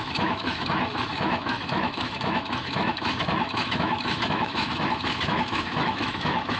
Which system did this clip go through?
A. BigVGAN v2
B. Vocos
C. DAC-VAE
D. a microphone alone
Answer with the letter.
C